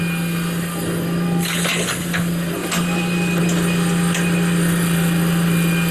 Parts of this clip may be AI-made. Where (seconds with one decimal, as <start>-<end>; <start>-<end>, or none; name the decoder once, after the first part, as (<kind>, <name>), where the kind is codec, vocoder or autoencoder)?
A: none

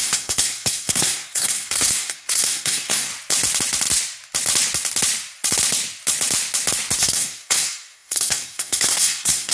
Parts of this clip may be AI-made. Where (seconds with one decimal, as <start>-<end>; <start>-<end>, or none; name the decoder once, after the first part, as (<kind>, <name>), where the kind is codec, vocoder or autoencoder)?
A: 0.0-3.1 (codec, SNAC); 7.0-9.5

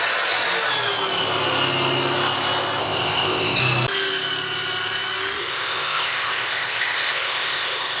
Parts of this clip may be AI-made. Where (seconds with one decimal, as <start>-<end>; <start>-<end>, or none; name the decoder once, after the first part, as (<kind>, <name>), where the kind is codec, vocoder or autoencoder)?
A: 2.8-3.6 (codec, ZipCodec); 5.4-8.0